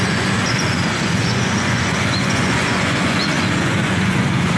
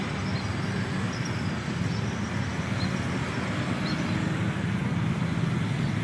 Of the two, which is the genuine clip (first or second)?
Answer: second